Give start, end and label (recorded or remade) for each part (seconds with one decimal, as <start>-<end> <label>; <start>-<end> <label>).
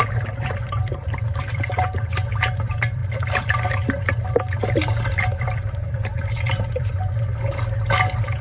0.0-3.0 remade; 3.0-4.6 recorded; 4.6-6.1 remade; 6.1-8.4 recorded